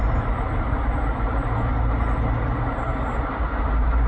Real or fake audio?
real